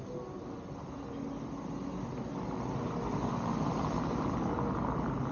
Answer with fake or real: real